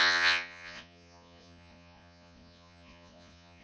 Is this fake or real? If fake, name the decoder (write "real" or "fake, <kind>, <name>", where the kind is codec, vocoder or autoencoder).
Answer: fake, vocoder, Vocos